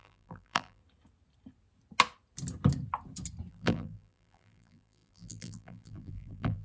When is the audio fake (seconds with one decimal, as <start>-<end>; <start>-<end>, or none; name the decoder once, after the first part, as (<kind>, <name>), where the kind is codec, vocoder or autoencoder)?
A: 0.0-0.8 (vocoder, BigVGAN v2); 3.5-6.6